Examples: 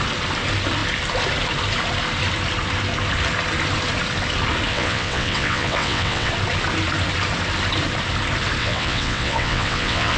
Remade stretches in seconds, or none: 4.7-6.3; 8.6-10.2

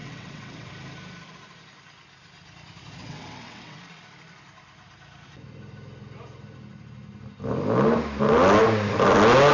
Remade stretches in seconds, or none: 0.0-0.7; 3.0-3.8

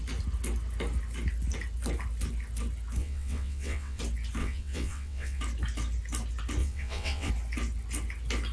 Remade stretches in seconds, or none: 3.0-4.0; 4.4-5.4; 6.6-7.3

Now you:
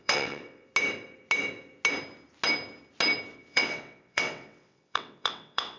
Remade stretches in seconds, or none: 0.0-0.7; 3.3-5.8